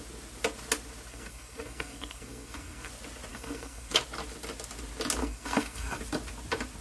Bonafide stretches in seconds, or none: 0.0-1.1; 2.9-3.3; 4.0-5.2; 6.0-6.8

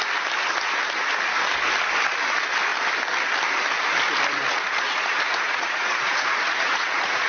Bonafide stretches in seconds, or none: 0.0-4.5

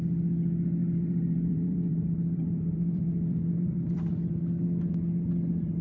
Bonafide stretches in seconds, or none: 0.0-0.8; 4.3-5.8

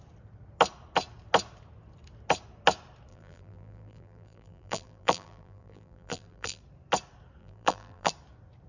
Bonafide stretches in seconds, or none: 0.0-3.1; 6.6-7.4; 8.1-8.7

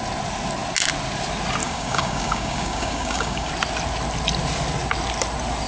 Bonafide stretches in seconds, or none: 0.0-1.6; 3.5-5.7